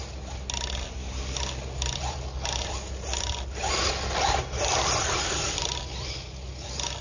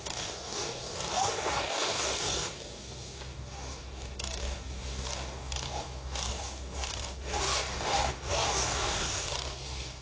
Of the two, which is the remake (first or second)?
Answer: second